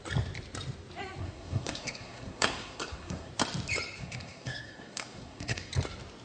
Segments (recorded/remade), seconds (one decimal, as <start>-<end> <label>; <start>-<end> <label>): 0.0-1.2 recorded; 1.2-3.3 remade; 3.3-4.0 recorded; 4.0-5.7 remade; 5.7-6.2 recorded